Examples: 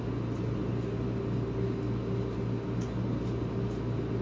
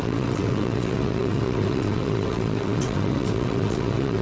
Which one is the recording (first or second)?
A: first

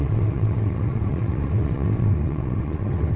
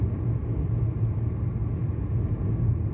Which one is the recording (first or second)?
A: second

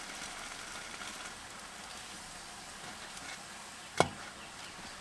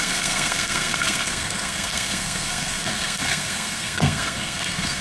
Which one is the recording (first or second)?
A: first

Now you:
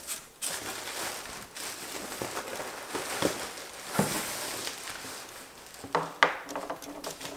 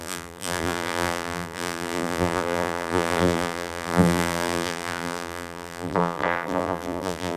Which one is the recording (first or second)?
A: first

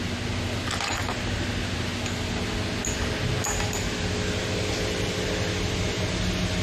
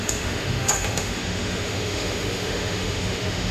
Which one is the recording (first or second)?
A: first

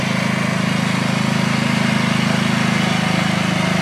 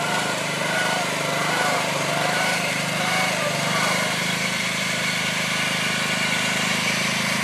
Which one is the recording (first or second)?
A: first